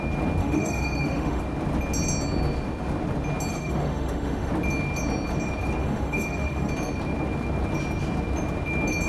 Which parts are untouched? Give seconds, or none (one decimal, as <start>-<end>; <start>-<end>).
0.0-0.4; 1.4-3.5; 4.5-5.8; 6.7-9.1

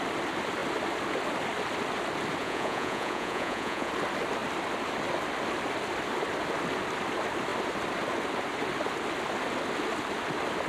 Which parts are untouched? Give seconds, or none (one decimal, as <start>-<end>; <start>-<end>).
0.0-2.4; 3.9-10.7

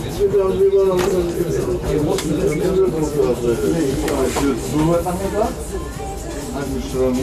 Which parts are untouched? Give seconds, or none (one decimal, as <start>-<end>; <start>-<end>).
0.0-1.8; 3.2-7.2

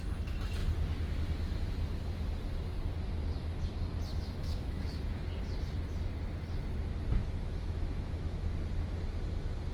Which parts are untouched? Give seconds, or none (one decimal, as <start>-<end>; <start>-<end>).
0.0-4.1; 5.3-7.2; 8.5-9.7

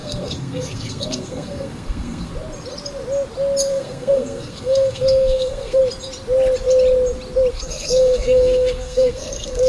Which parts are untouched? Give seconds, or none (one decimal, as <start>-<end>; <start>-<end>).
2.3-3.7; 5.8-7.5

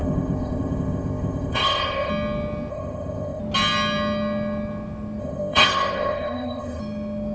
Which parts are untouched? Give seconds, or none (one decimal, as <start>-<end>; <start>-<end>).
2.1-2.7; 3.4-5.2; 6.8-7.3

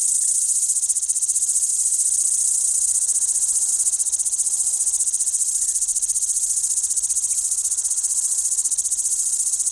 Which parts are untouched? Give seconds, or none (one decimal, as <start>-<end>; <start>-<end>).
0.0-9.7

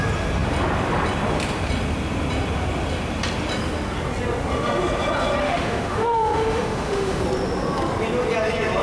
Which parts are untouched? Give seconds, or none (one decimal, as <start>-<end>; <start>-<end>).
0.0-5.4; 7.2-8.8